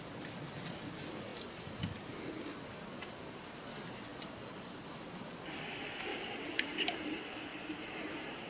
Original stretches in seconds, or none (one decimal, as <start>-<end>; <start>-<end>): 0.0-6.1; 7.0-7.5

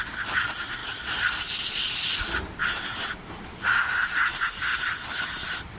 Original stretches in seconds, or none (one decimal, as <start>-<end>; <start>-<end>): 0.0-0.8; 1.8-2.6; 4.8-5.8

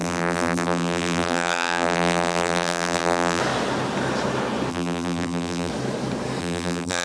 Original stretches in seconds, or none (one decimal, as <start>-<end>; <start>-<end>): 3.4-4.7; 5.7-6.4

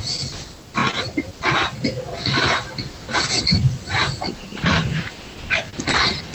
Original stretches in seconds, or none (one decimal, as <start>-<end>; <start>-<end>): 0.0-4.5; 5.3-6.3

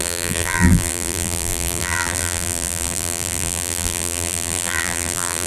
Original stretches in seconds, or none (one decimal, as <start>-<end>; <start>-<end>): none

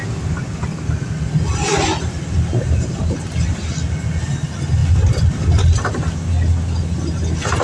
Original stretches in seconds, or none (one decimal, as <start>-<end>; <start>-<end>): 3.7-4.8; 6.3-7.6